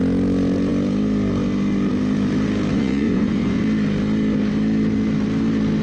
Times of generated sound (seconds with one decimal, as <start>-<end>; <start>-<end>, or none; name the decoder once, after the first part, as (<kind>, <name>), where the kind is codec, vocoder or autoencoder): 2.7-3.6 (vocoder, Vocos)